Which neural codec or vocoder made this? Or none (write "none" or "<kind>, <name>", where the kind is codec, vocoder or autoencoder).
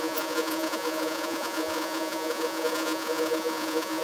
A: vocoder, Vocos